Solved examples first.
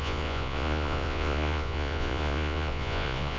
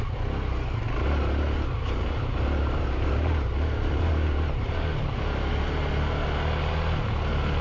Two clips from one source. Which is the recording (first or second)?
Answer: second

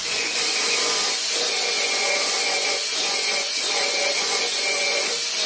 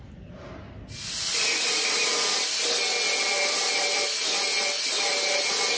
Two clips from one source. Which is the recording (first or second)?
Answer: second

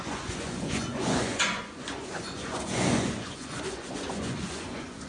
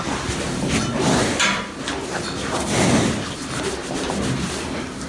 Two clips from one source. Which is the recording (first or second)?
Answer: second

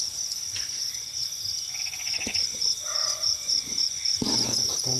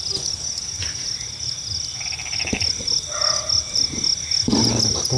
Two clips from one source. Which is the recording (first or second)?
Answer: second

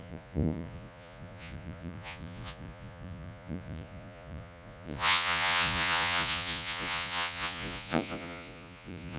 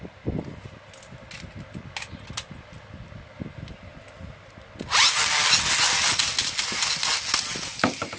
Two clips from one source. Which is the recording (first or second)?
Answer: second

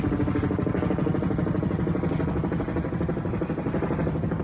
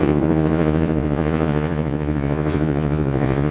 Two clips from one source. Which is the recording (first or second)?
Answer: first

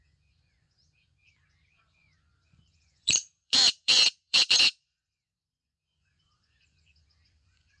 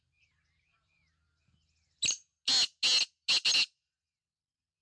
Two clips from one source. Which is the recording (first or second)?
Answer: second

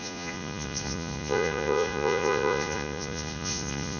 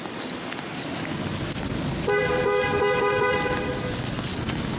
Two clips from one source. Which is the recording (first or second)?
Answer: second